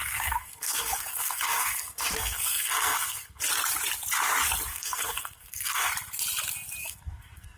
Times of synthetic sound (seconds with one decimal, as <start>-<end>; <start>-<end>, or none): 0.0-3.4; 4.7-5.9; 6.8-7.6